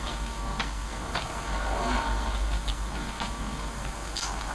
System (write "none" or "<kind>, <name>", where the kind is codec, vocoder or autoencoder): codec, SNAC